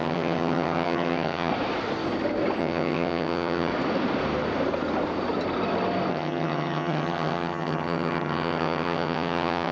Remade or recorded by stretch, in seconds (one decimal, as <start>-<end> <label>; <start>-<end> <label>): 0.0-1.5 remade; 1.5-2.6 recorded; 2.6-3.7 remade; 3.7-6.1 recorded; 6.1-9.7 remade